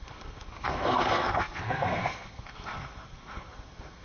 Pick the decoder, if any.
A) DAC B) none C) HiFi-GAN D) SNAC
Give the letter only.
D